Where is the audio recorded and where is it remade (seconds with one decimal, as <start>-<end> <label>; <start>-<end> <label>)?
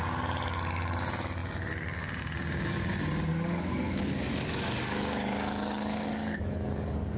0.0-3.3 recorded; 3.3-7.2 remade